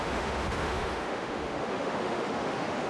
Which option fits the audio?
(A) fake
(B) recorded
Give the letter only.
A